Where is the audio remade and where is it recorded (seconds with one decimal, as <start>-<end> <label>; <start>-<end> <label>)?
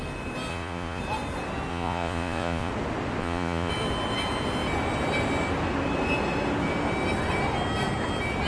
0.0-0.5 recorded; 0.5-1.0 remade; 1.0-1.7 recorded; 1.7-2.7 remade; 2.7-3.2 recorded; 3.2-3.7 remade; 3.7-8.5 recorded